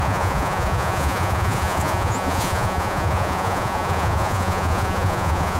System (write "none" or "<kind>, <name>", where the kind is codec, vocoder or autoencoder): vocoder, Vocos